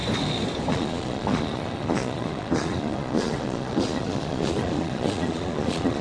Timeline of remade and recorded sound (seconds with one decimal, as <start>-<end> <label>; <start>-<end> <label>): 0.0-0.7 recorded; 0.7-6.0 remade